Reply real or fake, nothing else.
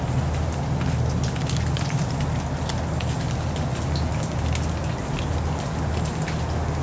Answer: real